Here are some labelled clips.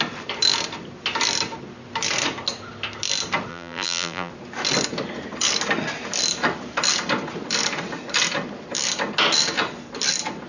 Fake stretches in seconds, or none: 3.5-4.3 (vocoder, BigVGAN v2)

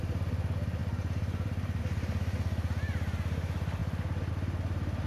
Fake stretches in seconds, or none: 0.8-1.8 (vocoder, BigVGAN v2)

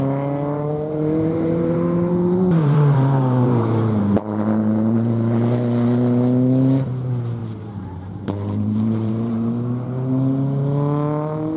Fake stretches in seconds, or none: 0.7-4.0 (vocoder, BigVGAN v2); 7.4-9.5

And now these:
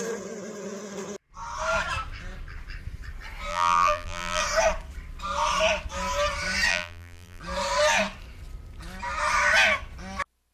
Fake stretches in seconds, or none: 3.5-4.4 (vocoder, BigVGAN v2); 6.7-7.4